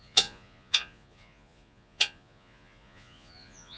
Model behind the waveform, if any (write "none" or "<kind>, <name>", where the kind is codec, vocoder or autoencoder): vocoder, Vocos